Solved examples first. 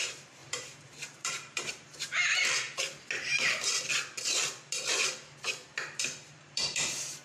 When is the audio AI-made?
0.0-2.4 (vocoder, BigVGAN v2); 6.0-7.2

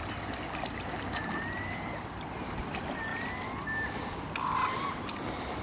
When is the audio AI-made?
none

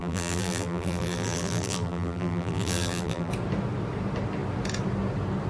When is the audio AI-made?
0.0-3.3 (vocoder, BigVGAN v2)

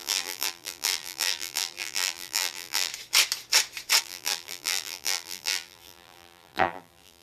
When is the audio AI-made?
0.0-2.9 (vocoder, BigVGAN v2); 4.0-7.2

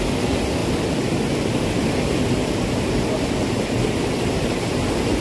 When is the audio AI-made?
none

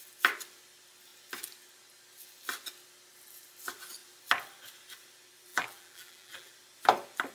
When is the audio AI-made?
5.5-6.5 (vocoder, BigVGAN v2)